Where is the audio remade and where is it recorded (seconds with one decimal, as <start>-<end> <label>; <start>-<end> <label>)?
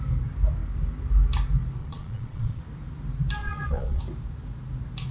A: 0.0-1.8 recorded; 1.8-2.6 remade; 2.6-3.4 recorded; 3.4-4.0 remade; 4.0-5.1 recorded